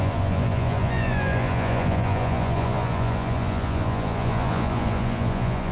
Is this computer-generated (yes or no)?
yes